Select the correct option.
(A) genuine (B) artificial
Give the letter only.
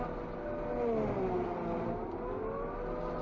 A